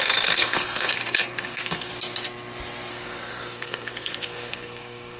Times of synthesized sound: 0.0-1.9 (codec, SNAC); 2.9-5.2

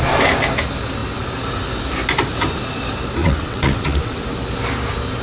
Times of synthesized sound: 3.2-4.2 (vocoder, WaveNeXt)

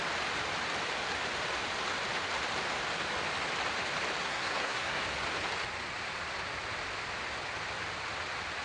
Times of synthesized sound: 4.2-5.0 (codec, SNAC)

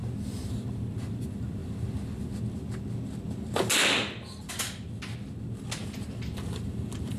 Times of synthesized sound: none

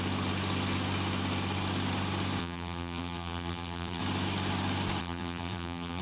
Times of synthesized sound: 2.4-4.0 (vocoder, BigVGAN v2); 5.0-6.0

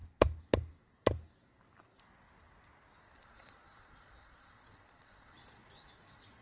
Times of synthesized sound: 3.0-6.4 (vocoder, Vocos)

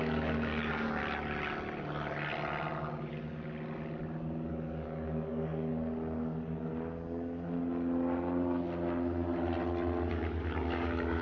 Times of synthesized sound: 0.0-1.0 (codec, DAC); 4.5-5.7; 10.1-11.2

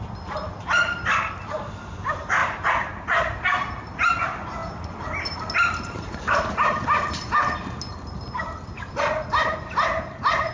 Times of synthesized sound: none